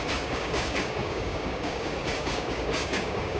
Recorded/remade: remade